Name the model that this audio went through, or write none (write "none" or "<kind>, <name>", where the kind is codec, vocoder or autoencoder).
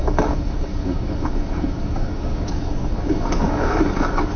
codec, DAC